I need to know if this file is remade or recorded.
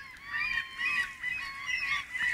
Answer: recorded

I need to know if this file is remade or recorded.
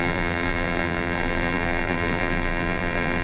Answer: remade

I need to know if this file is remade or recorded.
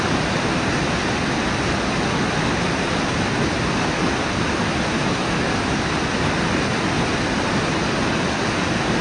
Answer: recorded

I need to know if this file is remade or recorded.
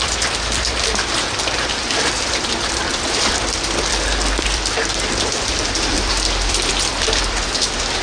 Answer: remade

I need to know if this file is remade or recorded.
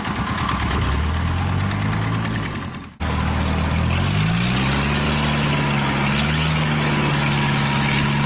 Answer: recorded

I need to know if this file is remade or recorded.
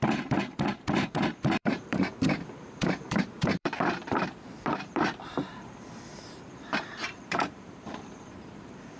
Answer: remade